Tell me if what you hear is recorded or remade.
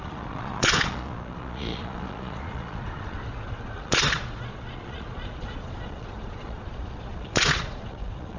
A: remade